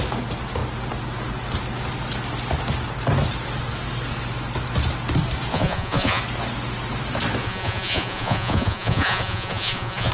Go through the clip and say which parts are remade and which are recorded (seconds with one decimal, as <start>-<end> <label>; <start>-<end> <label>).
0.0-5.5 recorded; 5.5-6.2 remade; 6.2-7.4 recorded; 7.4-10.1 remade